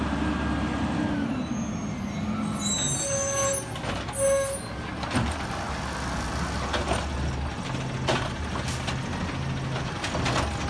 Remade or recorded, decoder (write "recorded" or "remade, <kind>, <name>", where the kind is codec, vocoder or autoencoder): recorded